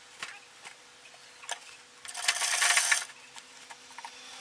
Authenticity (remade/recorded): recorded